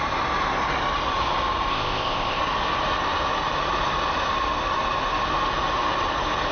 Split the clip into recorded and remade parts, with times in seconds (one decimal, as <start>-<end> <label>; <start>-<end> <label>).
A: 0.0-1.7 recorded; 1.7-2.4 remade; 2.4-6.5 recorded